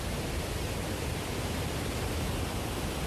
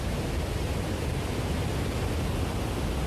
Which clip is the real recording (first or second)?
second